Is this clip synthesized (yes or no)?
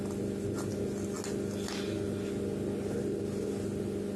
no